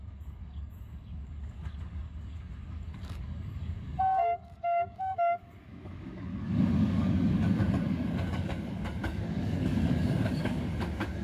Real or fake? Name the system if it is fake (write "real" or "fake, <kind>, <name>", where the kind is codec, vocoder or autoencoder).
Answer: fake, codec, DAC